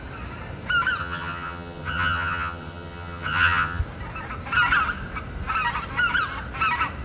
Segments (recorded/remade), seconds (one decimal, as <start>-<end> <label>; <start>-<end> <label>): 0.0-1.0 recorded; 1.0-3.8 remade; 3.8-7.0 recorded